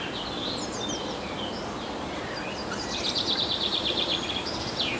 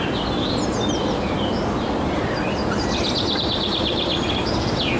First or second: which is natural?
second